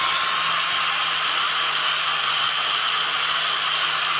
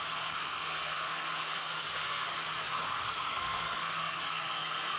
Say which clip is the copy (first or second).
second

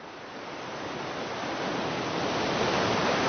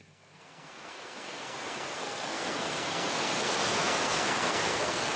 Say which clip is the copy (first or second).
second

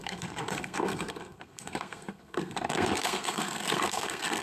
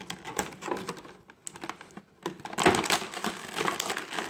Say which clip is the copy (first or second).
first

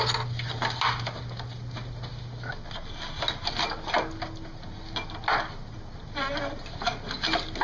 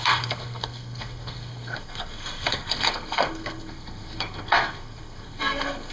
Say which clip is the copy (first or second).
second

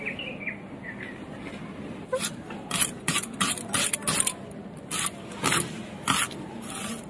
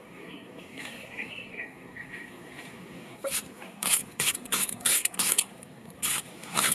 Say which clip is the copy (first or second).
second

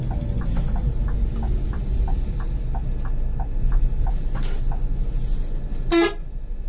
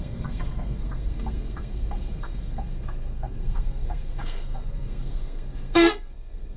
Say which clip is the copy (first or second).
second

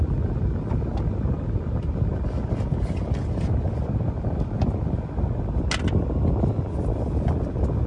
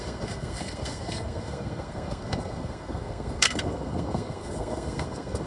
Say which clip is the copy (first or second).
second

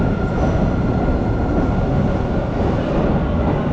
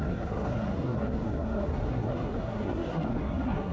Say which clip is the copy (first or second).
second